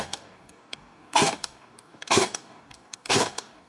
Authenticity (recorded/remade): remade